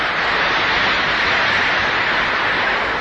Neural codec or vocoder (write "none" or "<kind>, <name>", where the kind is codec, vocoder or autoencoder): none